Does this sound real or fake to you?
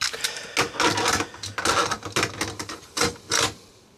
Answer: real